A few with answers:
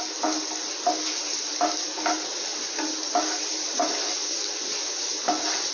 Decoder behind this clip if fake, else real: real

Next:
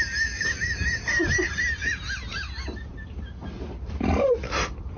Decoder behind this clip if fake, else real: real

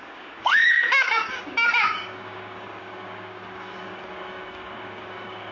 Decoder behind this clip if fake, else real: fake, codec, DAC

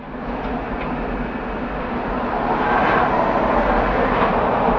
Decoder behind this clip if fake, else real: real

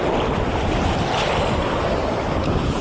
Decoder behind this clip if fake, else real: real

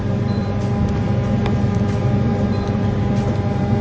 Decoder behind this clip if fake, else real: real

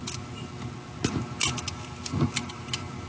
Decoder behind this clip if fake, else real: real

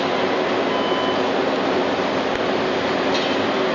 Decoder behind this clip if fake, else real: real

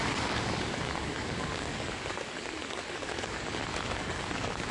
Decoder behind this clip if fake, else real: fake, codec, DAC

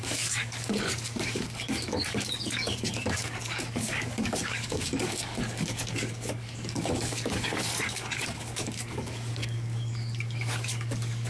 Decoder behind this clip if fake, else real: fake, codec, DAC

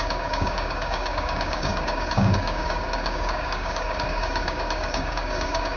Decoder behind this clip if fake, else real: fake, codec, DAC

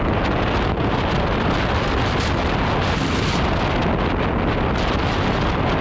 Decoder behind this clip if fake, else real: real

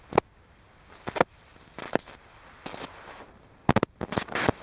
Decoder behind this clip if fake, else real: real